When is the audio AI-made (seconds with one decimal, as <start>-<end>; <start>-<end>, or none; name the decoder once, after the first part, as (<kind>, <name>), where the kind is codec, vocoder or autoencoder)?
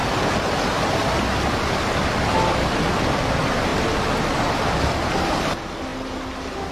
2.7-6.7 (vocoder, BigVGAN v2)